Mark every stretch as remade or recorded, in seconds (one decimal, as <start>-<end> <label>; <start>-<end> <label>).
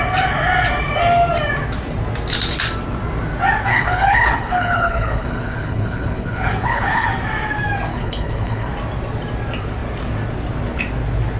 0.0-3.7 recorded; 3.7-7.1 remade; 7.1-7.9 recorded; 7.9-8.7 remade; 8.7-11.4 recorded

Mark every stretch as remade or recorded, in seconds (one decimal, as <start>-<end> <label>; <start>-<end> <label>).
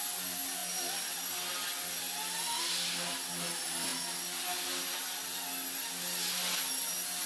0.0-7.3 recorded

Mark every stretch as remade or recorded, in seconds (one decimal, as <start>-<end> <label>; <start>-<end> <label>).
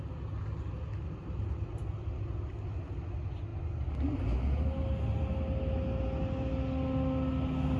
0.0-7.8 recorded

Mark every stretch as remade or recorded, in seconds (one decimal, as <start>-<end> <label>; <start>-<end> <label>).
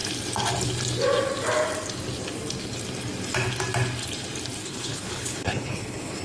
0.0-4.6 recorded; 4.6-6.2 remade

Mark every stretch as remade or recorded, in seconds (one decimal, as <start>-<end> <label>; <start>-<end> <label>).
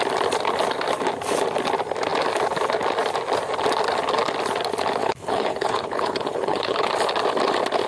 0.0-5.0 recorded; 5.0-6.9 remade; 6.9-7.9 recorded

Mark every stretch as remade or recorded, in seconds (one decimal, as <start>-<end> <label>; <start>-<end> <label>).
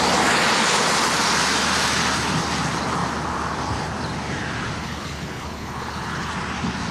0.0-4.8 recorded; 4.8-6.3 remade; 6.3-6.9 recorded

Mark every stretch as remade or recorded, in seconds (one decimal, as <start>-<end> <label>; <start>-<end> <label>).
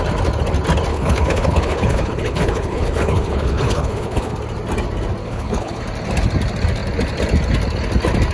0.0-0.9 recorded; 0.9-4.3 remade; 4.3-5.2 recorded; 5.2-5.8 remade; 5.8-8.3 recorded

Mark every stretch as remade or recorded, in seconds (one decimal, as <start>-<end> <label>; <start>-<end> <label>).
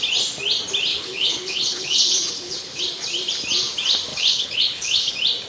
0.0-0.9 recorded; 0.9-2.8 remade; 2.8-4.1 recorded; 4.1-5.1 remade; 5.1-5.5 recorded